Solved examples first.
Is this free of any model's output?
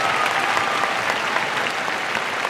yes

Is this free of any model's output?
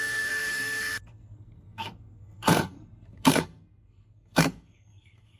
no